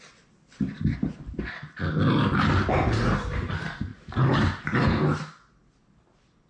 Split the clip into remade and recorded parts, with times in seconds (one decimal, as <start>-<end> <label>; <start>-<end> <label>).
0.0-3.9 recorded; 3.9-4.6 remade; 4.6-6.5 recorded